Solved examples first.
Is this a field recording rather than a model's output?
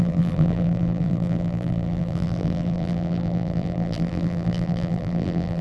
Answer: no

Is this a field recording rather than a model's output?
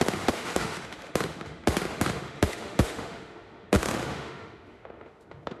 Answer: no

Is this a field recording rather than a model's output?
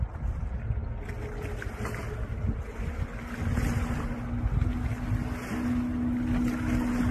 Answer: yes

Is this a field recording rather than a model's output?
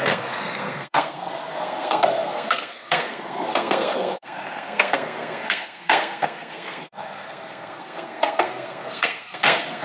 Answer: no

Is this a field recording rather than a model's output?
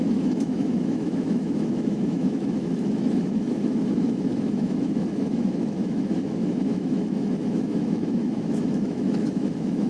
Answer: no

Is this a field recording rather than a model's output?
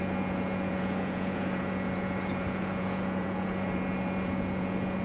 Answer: no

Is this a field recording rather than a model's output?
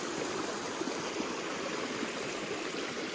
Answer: yes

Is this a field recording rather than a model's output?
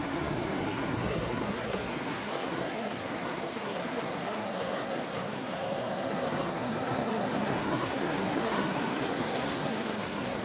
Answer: no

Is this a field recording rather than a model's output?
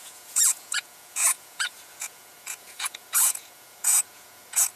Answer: no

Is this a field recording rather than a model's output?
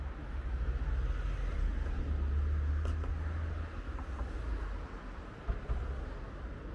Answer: yes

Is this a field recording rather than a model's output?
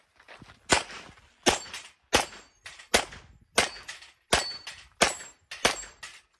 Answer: yes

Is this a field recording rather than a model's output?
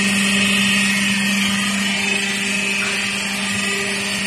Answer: yes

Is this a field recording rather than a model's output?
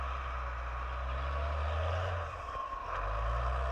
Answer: yes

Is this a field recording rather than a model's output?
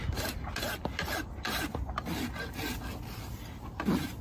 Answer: yes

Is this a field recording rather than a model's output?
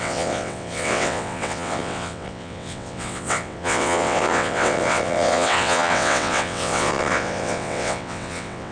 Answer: no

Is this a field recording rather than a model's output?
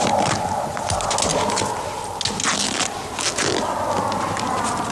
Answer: yes